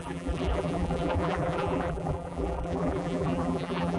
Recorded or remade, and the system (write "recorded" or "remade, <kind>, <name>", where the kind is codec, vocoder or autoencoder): remade, vocoder, BigVGAN v2